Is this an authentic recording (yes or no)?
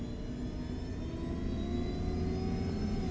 yes